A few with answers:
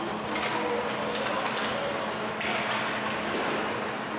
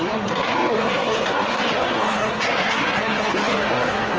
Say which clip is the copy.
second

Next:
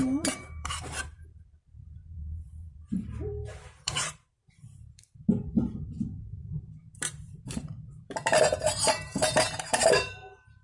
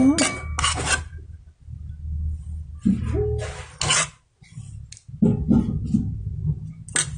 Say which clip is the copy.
first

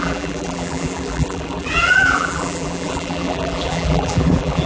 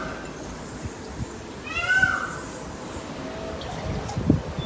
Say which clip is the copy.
first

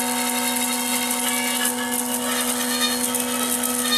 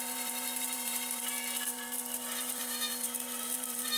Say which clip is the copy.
second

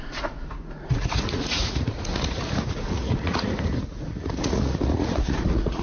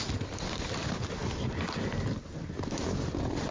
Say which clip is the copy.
first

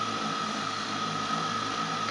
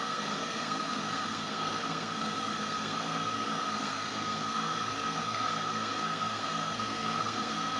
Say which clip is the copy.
second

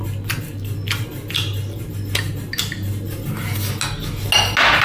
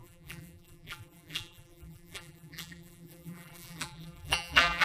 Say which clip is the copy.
second